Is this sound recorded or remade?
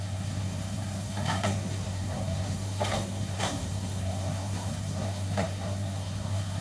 remade